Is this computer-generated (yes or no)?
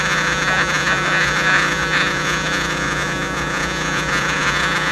yes